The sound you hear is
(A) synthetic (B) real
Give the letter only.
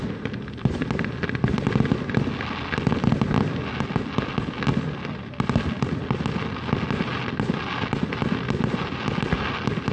B